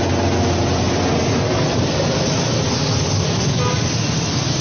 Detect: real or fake real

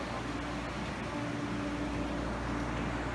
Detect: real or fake real